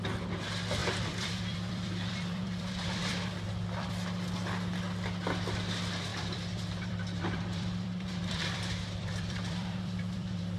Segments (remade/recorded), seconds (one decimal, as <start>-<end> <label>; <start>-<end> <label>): 0.0-0.8 recorded; 0.8-3.9 remade; 3.9-6.1 recorded; 6.1-10.6 remade